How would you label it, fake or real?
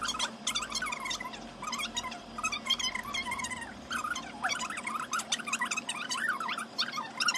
real